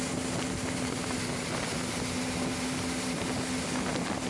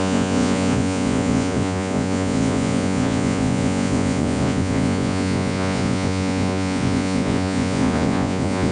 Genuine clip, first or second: first